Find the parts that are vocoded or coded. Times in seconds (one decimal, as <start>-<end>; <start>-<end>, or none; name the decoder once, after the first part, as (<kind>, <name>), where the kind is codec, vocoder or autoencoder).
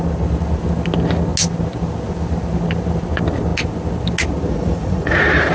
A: 4.5-5.5 (vocoder, Vocos)